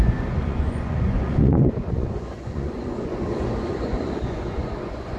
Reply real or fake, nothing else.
fake